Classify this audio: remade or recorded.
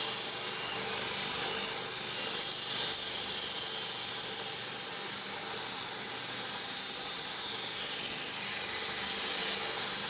recorded